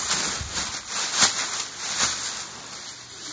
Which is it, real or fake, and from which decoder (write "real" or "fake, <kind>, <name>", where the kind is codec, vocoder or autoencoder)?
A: real